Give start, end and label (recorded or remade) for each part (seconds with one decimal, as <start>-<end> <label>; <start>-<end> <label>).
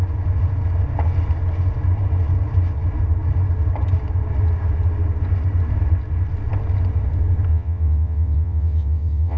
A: 0.0-7.5 recorded; 7.5-9.4 remade